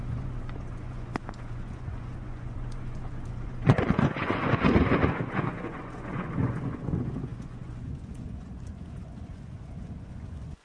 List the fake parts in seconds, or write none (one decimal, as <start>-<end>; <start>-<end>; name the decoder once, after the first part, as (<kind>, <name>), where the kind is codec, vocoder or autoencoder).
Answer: 0.0-10.6 (vocoder, Vocos)